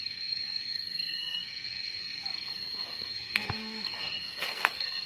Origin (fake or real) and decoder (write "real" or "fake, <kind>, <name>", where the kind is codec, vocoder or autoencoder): fake, codec, SNAC